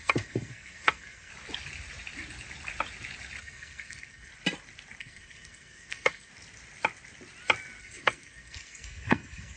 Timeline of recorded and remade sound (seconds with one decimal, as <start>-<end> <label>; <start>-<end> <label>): 0.0-1.3 remade; 1.3-3.4 recorded; 3.4-4.3 remade; 4.3-5.0 recorded; 5.0-6.3 remade; 6.3-7.8 recorded; 7.8-9.6 remade